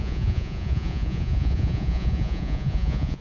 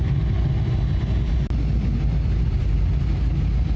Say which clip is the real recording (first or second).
second